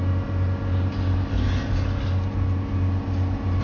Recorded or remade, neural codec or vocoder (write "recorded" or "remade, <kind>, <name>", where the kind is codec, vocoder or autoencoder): recorded